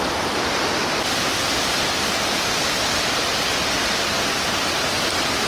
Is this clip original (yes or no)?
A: yes